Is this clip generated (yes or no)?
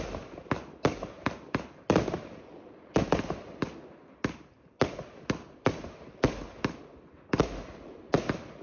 no